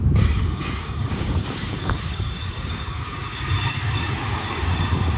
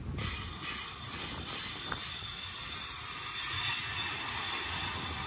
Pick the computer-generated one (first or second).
first